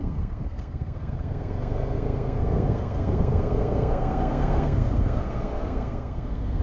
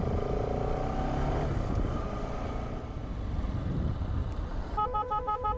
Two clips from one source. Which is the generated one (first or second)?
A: first